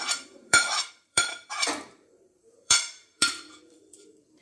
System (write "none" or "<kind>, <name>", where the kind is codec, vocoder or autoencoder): vocoder, BigVGAN v2